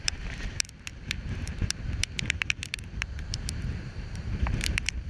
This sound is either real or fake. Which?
fake